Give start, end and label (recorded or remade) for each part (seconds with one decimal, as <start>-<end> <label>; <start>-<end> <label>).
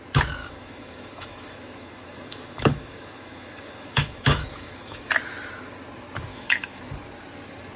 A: 0.0-0.4 recorded; 0.4-5.1 remade; 5.1-6.3 recorded; 6.3-6.8 remade; 6.8-7.8 recorded